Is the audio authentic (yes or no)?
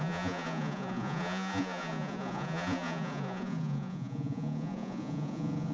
no